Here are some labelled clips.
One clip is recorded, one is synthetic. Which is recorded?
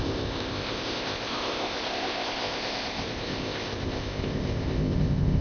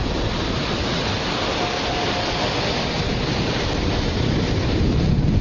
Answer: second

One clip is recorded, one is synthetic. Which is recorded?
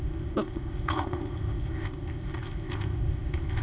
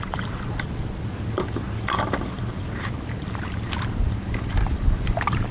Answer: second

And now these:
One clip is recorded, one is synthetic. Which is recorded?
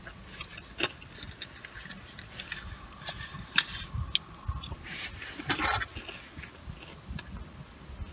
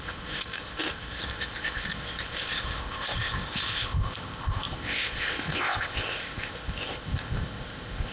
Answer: first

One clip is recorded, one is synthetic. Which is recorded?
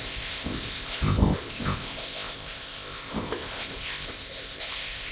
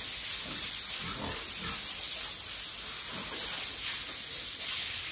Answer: second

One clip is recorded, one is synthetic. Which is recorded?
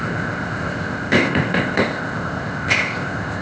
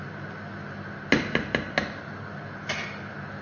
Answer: second